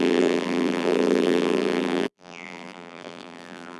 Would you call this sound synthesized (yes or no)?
yes